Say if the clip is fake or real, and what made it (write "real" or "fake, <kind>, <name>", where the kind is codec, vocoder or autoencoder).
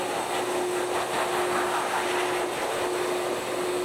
real